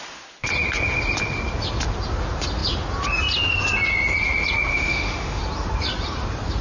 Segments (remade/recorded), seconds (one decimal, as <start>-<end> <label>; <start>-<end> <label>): 0.0-4.7 recorded; 4.7-5.4 remade; 5.4-6.6 recorded